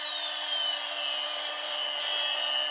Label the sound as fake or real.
real